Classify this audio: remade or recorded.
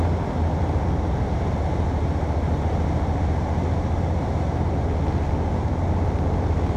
recorded